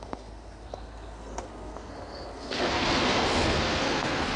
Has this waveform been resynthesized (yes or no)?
yes